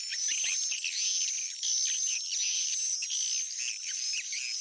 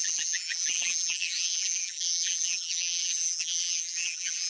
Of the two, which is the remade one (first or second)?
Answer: second